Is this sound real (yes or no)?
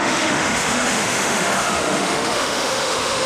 no